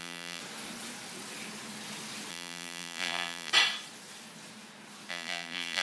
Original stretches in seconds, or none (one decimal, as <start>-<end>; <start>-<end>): 0.4-2.3; 3.5-5.1